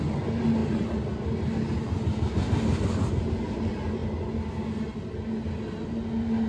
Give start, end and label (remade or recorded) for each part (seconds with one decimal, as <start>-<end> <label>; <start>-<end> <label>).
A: 0.0-6.5 recorded